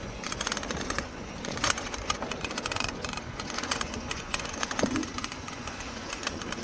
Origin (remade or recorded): remade